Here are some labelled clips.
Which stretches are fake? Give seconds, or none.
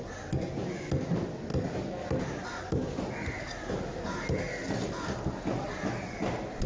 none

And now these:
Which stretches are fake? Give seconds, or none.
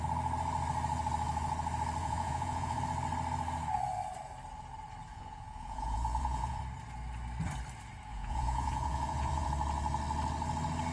2.0-2.8 (vocoder, Vocos); 5.1-6.6; 8.1-9.5